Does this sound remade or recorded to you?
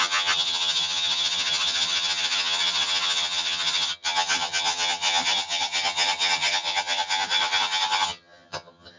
remade